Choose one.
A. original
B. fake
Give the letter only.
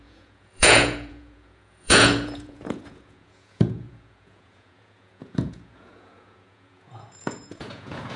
B